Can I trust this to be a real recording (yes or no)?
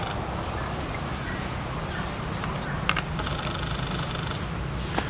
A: yes